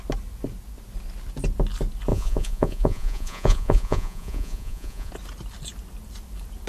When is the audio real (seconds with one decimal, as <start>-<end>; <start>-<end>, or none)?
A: 0.0-2.1; 5.1-6.7